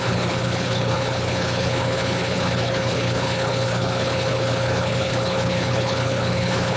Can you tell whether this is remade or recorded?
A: remade